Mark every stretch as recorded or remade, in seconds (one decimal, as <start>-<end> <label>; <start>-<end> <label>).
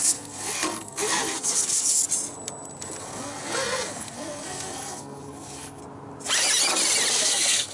0.0-2.0 remade; 2.0-3.0 recorded; 3.0-5.8 remade; 5.8-7.1 recorded; 7.1-7.7 remade